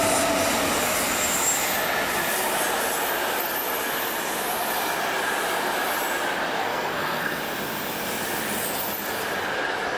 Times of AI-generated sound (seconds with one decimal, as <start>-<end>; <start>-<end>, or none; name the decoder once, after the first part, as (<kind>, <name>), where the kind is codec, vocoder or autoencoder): 6.6-7.4 (codec, SNAC)